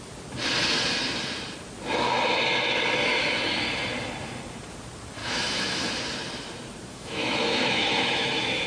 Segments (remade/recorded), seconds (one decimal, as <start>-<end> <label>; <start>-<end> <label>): 0.0-5.2 recorded; 5.2-5.9 remade; 5.9-6.9 recorded; 6.9-8.7 remade